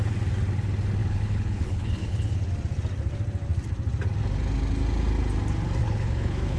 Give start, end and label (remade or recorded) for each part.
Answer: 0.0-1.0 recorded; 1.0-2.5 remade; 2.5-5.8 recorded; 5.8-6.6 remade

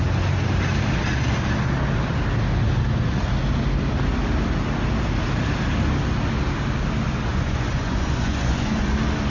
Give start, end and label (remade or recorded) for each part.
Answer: 0.0-7.3 recorded; 7.3-8.9 remade; 8.9-9.3 recorded

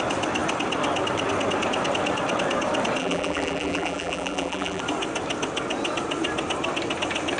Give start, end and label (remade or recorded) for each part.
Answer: 0.0-3.0 recorded; 3.0-4.8 remade; 4.8-7.4 recorded

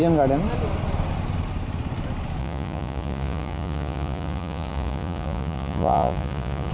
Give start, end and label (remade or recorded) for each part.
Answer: 0.0-2.4 recorded; 2.4-6.7 remade

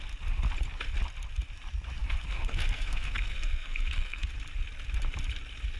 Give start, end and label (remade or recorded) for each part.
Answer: 0.0-2.0 recorded; 2.0-4.3 remade; 4.3-5.8 recorded

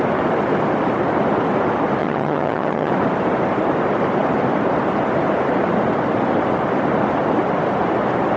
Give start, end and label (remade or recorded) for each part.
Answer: 0.0-2.0 recorded; 2.0-2.9 remade; 2.9-8.4 recorded